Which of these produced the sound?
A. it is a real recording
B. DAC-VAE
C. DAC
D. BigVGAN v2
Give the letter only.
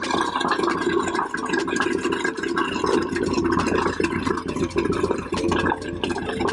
A